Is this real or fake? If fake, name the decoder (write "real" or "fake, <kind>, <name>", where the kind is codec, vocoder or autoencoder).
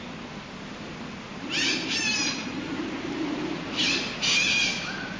real